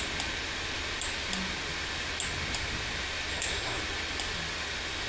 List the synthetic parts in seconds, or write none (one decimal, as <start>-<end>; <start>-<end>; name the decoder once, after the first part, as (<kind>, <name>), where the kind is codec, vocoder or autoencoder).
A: 3.3-3.8 (codec, SNAC)